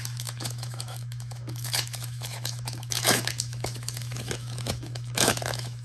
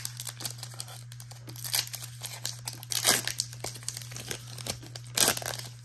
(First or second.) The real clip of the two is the second